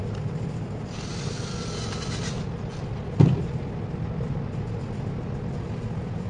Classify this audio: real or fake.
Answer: real